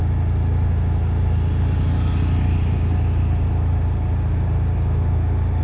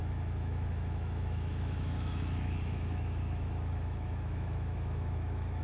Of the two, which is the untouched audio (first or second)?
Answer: first